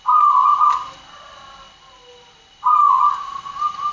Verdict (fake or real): real